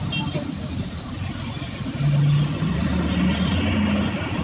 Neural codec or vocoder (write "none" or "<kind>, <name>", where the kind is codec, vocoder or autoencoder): none